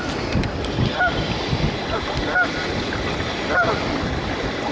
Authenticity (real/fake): real